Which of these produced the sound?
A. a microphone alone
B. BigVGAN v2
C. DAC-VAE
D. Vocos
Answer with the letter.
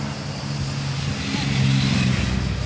A